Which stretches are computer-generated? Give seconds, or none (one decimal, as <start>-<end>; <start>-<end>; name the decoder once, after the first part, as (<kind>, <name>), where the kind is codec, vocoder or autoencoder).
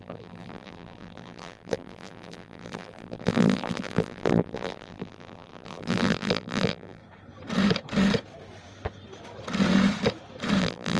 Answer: 0.0-7.0 (vocoder, BigVGAN v2); 10.6-11.0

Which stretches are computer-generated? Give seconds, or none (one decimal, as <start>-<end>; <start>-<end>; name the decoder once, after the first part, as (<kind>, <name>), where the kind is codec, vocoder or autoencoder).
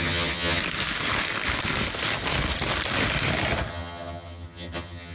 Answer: 0.0-0.6 (vocoder, HiFi-GAN); 3.7-5.1